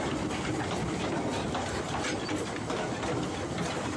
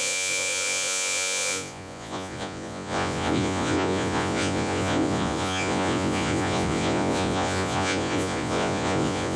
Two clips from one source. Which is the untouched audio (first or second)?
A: first